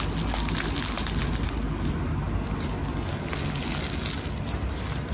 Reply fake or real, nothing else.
real